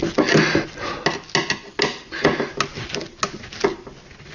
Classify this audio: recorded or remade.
recorded